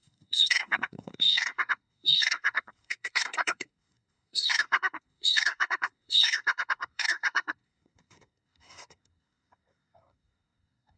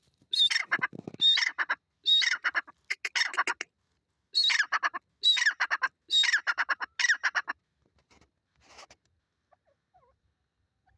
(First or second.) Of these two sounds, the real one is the second